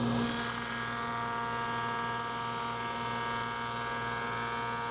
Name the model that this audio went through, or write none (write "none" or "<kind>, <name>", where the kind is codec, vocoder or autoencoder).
none